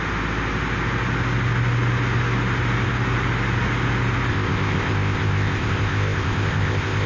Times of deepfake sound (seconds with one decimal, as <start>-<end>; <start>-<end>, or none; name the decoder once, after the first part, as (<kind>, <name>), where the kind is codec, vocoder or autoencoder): 4.3-7.1 (codec, ZipCodec)